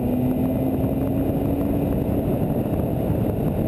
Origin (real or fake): real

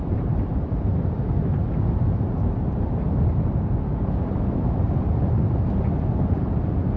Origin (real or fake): real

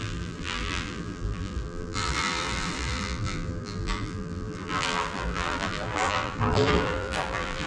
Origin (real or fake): fake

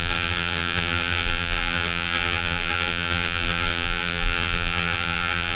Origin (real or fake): fake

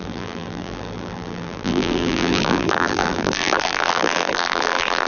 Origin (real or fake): fake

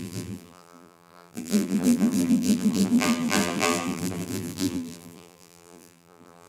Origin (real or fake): fake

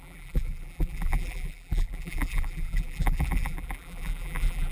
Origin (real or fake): fake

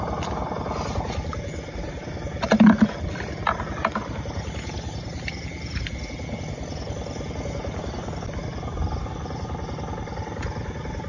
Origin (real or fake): real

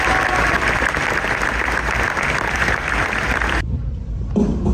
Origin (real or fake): fake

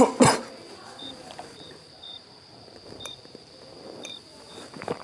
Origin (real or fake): fake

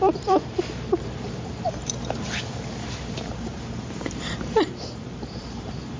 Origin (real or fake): fake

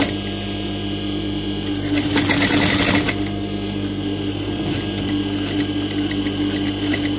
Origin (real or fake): real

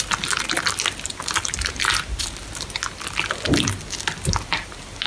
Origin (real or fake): real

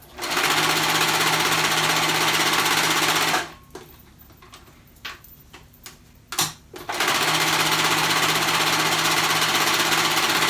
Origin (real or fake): real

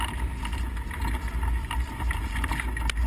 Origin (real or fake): real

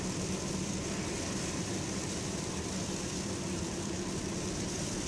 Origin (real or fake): fake